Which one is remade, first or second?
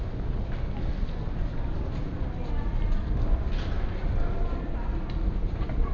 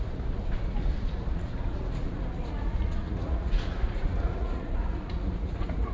second